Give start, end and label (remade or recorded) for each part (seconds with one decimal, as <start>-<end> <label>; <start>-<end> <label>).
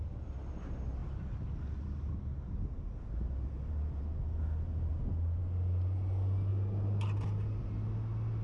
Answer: 0.0-8.4 recorded